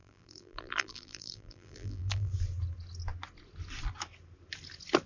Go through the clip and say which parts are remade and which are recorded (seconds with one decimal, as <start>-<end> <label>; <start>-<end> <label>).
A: 0.0-2.3 remade; 2.3-5.1 recorded